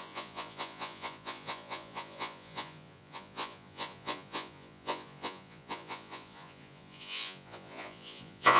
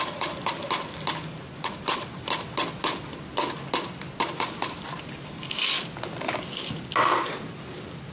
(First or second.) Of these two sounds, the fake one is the first